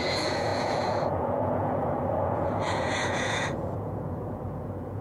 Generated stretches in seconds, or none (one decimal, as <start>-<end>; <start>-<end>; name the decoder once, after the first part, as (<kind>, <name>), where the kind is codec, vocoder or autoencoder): 0.0-5.0 (vocoder, Vocos)